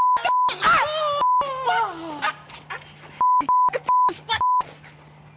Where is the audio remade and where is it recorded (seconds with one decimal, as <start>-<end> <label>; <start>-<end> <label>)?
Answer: 0.0-5.4 recorded